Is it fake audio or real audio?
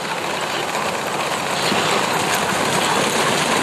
real